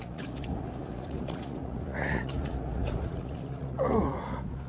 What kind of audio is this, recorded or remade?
remade